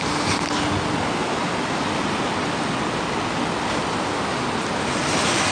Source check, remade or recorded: recorded